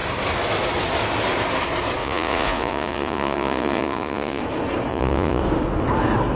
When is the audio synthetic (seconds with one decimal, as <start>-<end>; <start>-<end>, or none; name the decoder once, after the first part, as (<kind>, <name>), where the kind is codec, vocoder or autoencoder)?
2.0-4.4 (vocoder, Vocos); 4.9-5.4